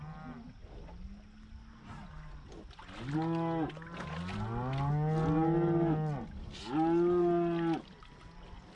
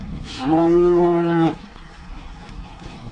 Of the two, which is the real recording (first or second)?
first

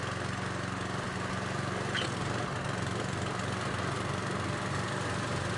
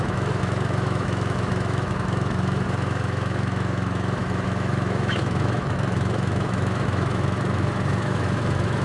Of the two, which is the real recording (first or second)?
first